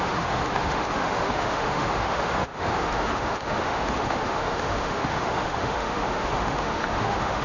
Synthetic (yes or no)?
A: yes